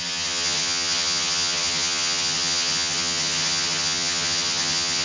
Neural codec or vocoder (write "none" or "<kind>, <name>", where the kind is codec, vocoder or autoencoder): vocoder, HiFi-GAN